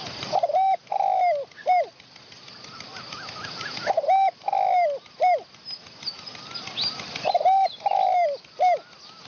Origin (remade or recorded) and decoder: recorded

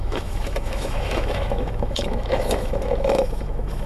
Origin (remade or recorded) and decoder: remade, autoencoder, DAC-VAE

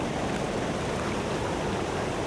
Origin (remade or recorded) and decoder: recorded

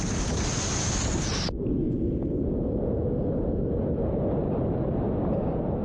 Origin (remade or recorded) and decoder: recorded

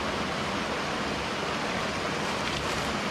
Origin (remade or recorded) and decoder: recorded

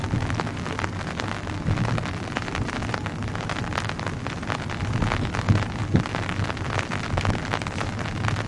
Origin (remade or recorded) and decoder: recorded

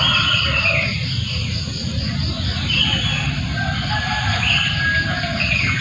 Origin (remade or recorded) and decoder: recorded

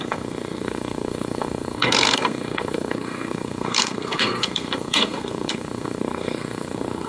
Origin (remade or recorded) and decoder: remade, codec, SNAC